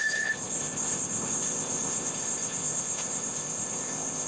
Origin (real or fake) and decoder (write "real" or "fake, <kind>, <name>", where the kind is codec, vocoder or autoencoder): fake, codec, ZipCodec